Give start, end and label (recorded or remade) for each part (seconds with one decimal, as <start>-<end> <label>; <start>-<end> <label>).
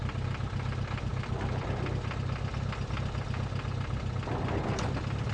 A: 0.0-5.3 recorded